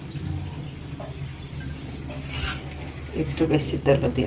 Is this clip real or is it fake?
real